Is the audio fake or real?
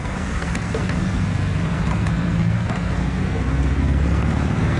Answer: fake